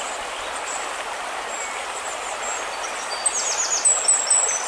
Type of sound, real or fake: real